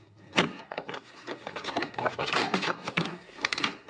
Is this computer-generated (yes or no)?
yes